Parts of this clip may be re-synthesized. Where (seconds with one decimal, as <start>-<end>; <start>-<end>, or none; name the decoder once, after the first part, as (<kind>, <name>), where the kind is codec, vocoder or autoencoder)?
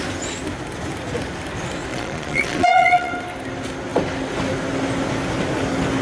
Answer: 1.9-3.1 (vocoder, Vocos)